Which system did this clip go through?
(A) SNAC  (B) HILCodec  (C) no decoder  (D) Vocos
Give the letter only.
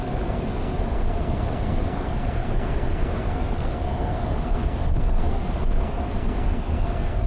A